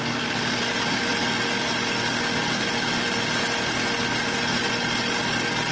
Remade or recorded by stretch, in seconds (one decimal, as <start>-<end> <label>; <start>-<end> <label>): 0.0-5.7 recorded